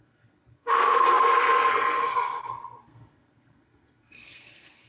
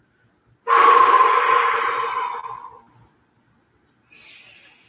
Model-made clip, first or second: first